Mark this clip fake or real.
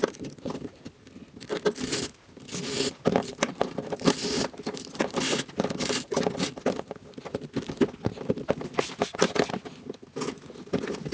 real